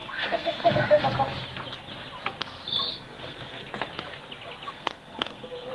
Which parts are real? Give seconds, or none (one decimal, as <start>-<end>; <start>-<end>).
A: 1.0-2.9; 3.7-4.7